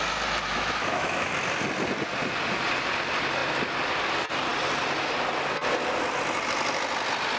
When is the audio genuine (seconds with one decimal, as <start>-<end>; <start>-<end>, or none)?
0.0-0.5; 1.3-7.4

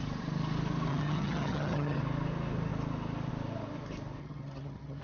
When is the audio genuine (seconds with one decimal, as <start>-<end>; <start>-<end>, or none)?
0.0-0.9; 2.0-4.2

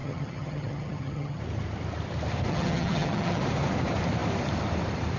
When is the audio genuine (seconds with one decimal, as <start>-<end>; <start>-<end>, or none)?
1.4-2.5; 3.4-5.2

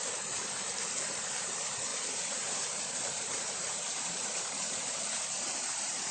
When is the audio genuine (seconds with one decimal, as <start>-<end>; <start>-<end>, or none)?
0.0-1.4

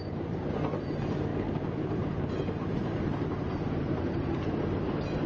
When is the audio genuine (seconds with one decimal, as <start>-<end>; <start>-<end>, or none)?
0.5-1.3; 4.5-5.3